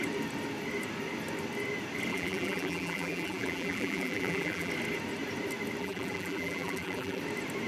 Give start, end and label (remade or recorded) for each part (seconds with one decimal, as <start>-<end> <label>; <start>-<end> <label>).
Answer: 0.0-2.1 recorded; 2.1-4.7 remade; 4.7-5.8 recorded; 5.8-7.2 remade; 7.2-7.7 recorded